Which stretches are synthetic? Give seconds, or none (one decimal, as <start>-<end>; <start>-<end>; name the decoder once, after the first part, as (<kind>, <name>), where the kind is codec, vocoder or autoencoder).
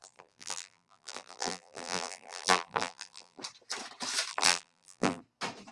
0.0-3.4 (vocoder, BigVGAN v2); 4.3-5.2